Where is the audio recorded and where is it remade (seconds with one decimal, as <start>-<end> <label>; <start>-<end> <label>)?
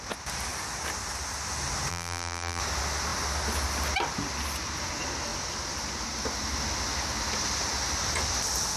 0.0-1.9 recorded; 1.9-2.6 remade; 2.6-8.8 recorded